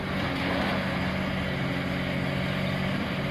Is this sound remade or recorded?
recorded